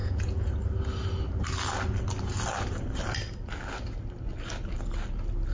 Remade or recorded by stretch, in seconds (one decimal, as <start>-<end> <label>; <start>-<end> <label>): 0.0-0.5 remade; 0.5-5.5 recorded